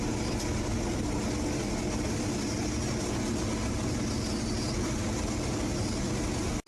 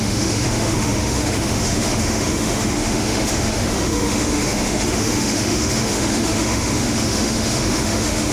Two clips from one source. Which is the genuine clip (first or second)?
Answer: first